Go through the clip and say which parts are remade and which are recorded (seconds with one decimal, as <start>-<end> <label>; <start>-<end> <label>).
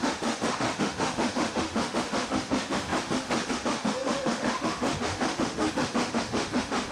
0.0-6.9 remade